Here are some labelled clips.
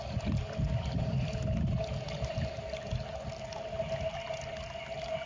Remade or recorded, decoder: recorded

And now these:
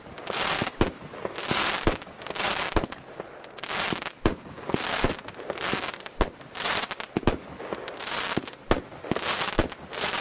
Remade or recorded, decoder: recorded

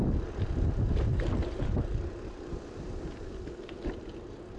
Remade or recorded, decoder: recorded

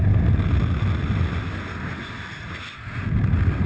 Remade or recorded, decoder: recorded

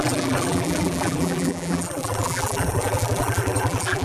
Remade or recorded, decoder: remade, vocoder, BigVGAN v2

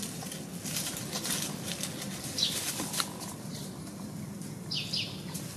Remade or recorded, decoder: recorded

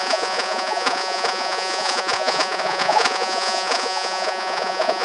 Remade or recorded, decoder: remade, vocoder, Vocos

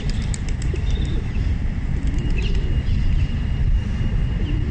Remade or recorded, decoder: remade, vocoder, BigVGAN v2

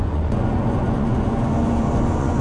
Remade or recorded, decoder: remade, vocoder, Vocos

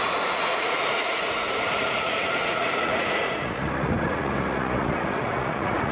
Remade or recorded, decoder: remade, vocoder, Vocos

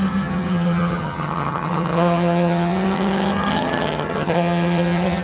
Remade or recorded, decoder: remade, vocoder, HiFi-GAN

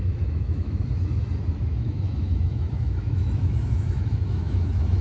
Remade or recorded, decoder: remade, autoencoder, DAC-VAE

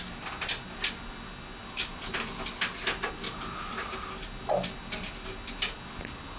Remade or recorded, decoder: recorded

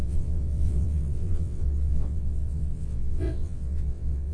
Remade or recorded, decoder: remade, vocoder, WaveNeXt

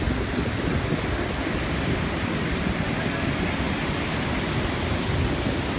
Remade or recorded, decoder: recorded